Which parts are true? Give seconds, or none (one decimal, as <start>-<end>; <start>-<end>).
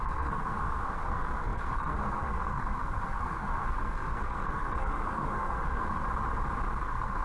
6.0-6.8